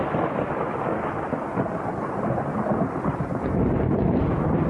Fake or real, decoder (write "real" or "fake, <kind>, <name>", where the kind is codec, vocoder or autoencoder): fake, vocoder, BigVGAN v2